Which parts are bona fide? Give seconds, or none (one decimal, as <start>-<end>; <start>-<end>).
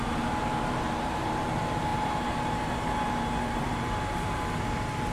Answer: none